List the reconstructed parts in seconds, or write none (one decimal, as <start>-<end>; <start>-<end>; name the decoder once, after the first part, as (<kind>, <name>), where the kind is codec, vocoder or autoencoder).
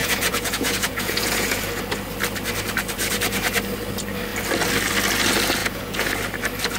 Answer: 0.0-1.6 (vocoder, Vocos); 5.6-6.1